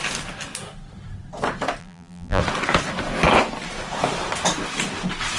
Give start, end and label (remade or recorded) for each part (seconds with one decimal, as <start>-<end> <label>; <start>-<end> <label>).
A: 0.0-1.8 recorded; 1.8-2.4 remade; 2.4-5.4 recorded